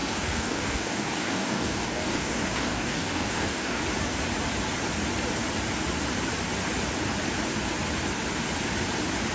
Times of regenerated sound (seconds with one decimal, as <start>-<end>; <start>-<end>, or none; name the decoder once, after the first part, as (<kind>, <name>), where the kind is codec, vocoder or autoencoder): 0.0-3.8 (codec, DAC)